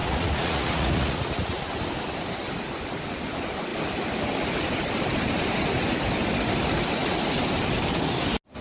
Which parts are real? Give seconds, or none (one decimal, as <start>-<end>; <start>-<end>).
1.7-8.6